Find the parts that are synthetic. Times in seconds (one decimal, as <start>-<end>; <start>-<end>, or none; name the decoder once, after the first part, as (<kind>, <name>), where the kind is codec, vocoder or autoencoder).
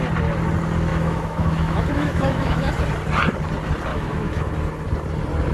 0.9-2.7 (autoencoder, DAC-VAE); 3.9-4.5